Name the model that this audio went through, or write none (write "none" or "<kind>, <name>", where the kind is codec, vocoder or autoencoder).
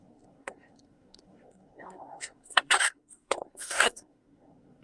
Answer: codec, SNAC